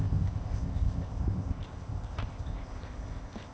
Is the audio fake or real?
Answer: fake